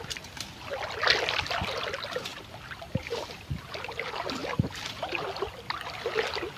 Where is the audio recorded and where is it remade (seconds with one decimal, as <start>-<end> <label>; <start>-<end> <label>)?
0.0-2.3 recorded; 2.3-3.0 remade; 3.0-6.6 recorded

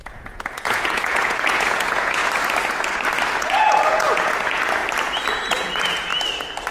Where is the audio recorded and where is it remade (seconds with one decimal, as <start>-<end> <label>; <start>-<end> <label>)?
0.0-2.2 remade; 2.2-3.4 recorded; 3.4-4.8 remade; 4.8-5.3 recorded; 5.3-6.1 remade; 6.1-6.7 recorded

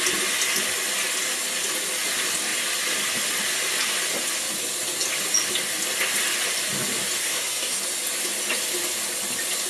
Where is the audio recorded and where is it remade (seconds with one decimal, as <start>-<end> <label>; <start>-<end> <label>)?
0.0-7.2 recorded; 7.2-7.8 remade; 7.8-9.7 recorded

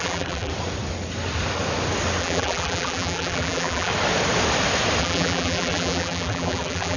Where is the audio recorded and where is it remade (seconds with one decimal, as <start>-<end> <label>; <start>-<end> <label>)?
0.0-0.5 remade; 0.5-2.2 recorded; 2.2-3.9 remade; 3.9-5.0 recorded; 5.0-7.0 remade